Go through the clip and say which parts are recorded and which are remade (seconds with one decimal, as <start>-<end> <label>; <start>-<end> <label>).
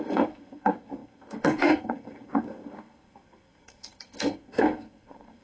0.0-5.4 remade